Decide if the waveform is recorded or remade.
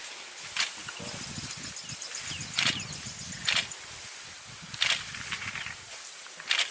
recorded